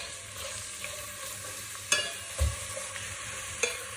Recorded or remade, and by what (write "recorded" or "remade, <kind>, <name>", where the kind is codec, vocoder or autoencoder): recorded